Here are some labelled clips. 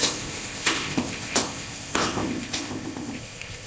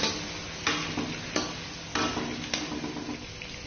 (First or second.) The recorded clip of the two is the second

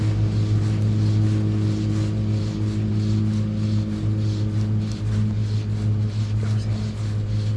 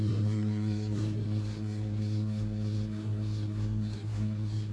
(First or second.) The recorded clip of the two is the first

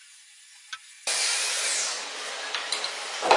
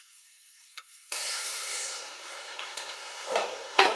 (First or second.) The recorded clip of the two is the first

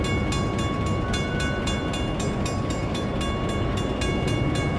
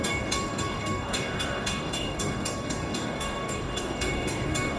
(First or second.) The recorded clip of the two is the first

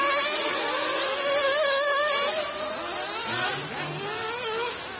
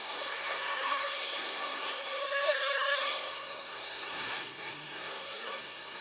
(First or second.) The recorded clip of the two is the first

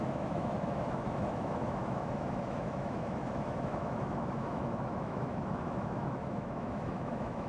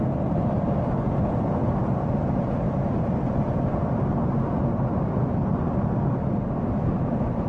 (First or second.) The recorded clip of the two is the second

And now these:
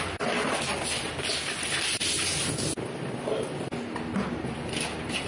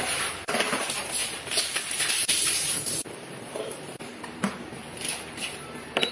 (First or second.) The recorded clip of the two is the first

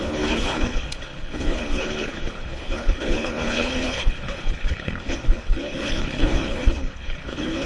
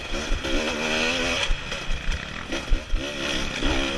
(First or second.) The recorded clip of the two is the second